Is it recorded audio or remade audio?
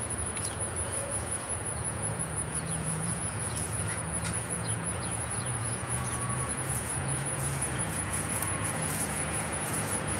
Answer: remade